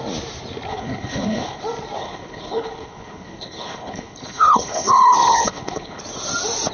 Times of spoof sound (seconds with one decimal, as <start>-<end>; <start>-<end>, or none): 0.7-1.6; 2.0-6.0